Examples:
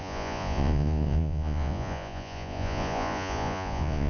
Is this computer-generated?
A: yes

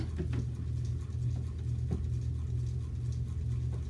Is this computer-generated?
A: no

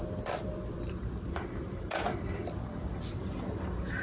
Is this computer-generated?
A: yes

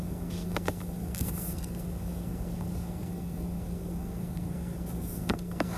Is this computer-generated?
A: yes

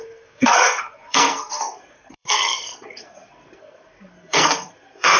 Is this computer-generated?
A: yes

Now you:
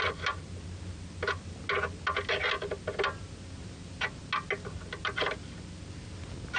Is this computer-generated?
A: no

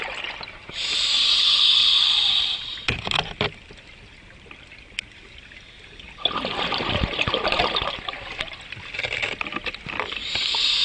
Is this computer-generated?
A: no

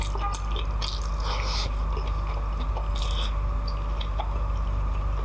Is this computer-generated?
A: no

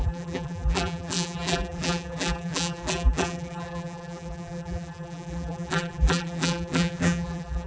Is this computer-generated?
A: yes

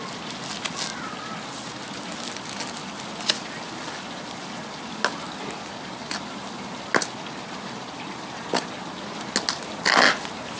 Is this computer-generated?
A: no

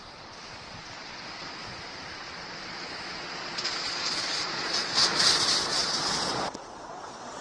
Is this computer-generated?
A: yes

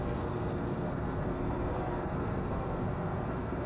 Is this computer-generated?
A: yes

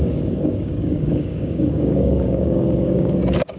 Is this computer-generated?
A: yes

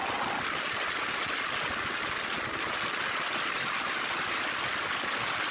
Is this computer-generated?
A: no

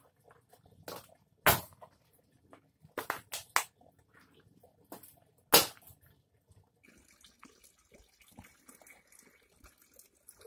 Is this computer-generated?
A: no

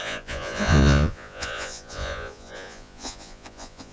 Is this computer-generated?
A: yes